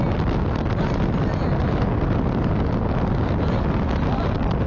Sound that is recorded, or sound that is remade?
recorded